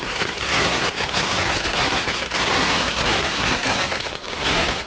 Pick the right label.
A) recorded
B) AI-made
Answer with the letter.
B